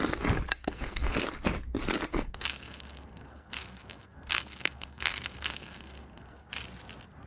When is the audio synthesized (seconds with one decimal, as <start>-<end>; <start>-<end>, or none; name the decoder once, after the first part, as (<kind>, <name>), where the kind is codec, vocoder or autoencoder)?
0.6-1.1 (codec, SNAC); 2.1-6.5